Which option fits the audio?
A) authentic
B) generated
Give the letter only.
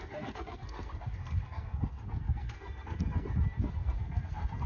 B